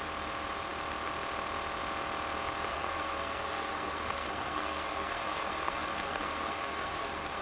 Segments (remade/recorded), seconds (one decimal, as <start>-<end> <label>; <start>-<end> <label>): 0.0-2.7 recorded; 2.7-7.4 remade